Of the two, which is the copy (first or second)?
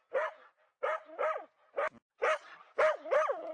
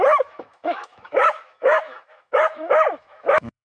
second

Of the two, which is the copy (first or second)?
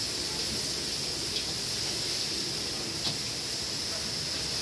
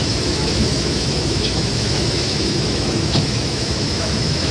second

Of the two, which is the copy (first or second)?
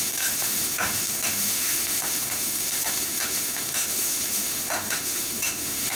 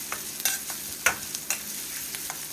first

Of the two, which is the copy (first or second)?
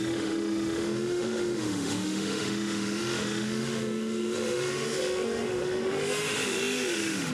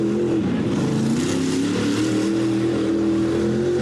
first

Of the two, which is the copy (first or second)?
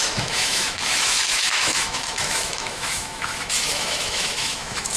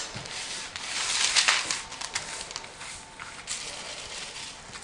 first